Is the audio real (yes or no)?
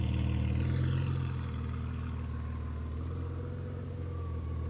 yes